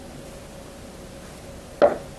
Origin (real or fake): real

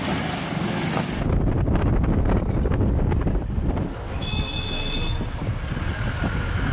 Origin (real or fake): real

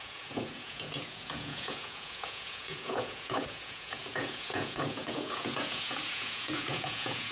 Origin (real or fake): fake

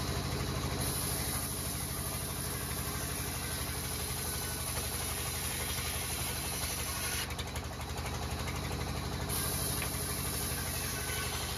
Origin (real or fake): real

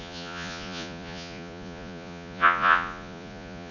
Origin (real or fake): fake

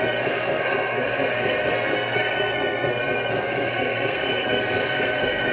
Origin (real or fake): fake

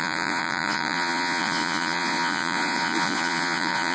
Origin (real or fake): fake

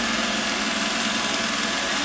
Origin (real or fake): real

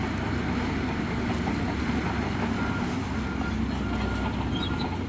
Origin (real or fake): real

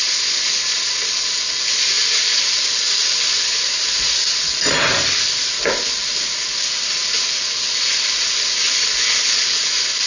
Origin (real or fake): real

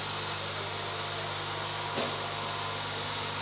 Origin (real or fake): real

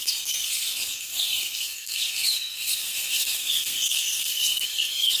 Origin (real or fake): fake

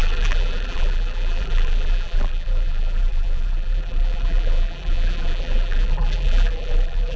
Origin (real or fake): fake